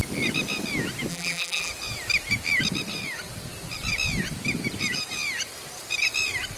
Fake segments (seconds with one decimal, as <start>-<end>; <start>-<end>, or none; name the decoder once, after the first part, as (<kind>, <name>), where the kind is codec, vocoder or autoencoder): 1.1-1.7 (vocoder, BigVGAN v2)